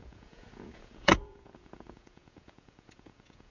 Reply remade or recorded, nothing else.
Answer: remade